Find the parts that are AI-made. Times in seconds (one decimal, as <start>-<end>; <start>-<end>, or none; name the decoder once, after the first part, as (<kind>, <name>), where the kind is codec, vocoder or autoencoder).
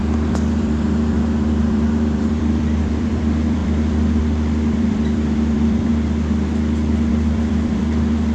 0.0-5.9 (vocoder, BigVGAN v2); 7.1-8.3